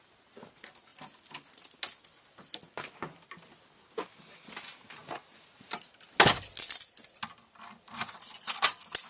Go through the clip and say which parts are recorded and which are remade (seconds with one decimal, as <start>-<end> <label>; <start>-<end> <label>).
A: 0.0-5.0 recorded; 5.0-5.7 remade; 5.7-9.1 recorded

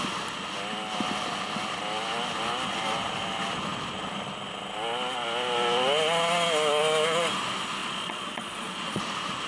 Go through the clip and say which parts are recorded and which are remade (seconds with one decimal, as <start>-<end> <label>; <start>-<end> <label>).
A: 0.0-7.8 recorded; 7.8-9.0 remade; 9.0-9.5 recorded

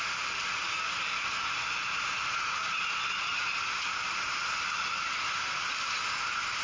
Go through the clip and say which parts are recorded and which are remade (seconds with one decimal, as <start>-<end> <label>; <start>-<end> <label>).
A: 0.0-2.6 recorded; 2.6-3.5 remade; 3.5-6.6 recorded

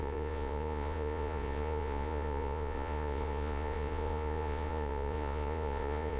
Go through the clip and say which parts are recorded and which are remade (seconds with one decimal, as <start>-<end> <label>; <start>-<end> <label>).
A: 0.0-6.2 remade

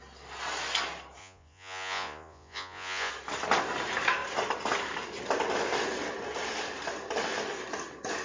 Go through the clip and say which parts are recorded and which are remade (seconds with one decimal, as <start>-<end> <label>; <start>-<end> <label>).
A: 0.0-1.2 recorded; 1.2-3.1 remade; 3.1-8.2 recorded

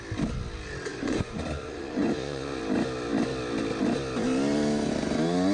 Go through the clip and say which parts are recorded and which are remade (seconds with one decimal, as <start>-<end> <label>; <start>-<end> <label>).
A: 0.0-0.9 recorded; 0.9-2.6 remade; 2.6-5.5 recorded